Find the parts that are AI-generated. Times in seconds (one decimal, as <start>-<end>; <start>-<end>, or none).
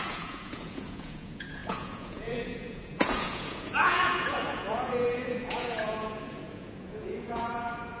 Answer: 0.0-8.0